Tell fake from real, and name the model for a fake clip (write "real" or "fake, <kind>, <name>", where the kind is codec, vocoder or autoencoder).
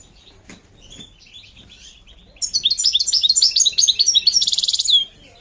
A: real